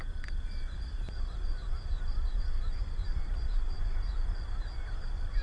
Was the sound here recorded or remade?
remade